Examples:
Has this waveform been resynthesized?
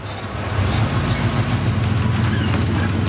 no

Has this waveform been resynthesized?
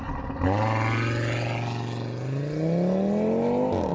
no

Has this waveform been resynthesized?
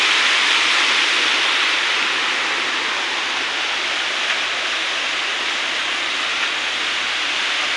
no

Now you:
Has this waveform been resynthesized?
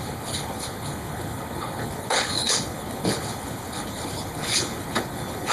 yes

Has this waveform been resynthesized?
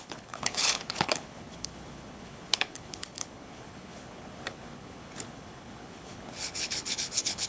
yes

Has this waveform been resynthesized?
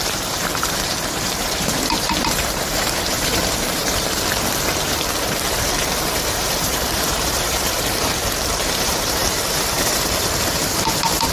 yes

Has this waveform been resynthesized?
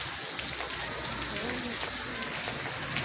no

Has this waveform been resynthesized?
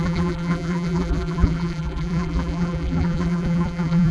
yes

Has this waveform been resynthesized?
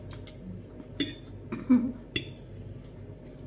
no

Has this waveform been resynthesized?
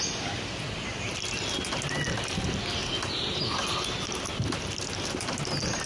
no